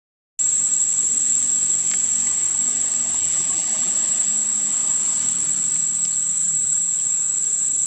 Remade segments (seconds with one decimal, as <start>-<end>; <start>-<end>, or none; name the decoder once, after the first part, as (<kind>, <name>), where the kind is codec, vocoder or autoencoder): 3.2-3.9 (vocoder, BigVGAN v2); 6.4-6.9